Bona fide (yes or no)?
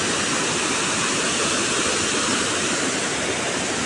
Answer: yes